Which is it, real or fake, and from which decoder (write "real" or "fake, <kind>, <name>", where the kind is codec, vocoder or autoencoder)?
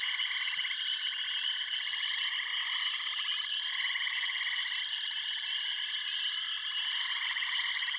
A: real